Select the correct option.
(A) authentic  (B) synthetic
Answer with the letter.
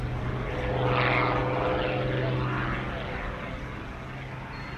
A